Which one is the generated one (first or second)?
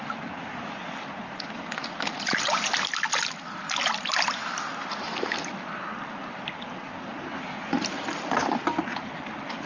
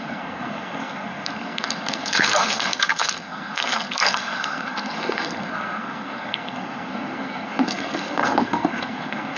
second